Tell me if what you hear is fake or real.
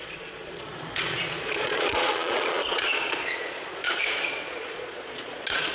fake